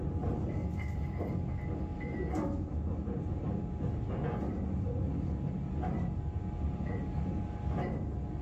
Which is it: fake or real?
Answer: real